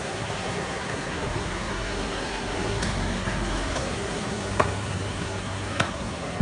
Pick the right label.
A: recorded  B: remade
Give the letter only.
B